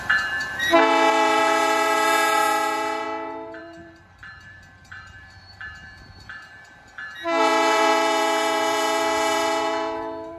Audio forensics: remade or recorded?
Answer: remade